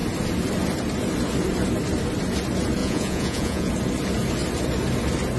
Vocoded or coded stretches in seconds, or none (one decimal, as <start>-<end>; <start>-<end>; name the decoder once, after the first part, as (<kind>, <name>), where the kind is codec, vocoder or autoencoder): 2.8-3.7 (vocoder, Vocos)